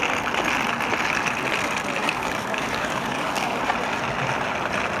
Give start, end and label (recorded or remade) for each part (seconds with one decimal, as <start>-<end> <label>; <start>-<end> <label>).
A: 0.0-2.0 recorded; 2.0-3.7 remade; 3.7-5.0 recorded